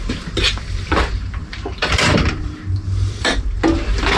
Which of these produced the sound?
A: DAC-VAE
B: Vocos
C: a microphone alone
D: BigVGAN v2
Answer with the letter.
D